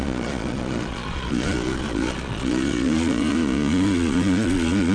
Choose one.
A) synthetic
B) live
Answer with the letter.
A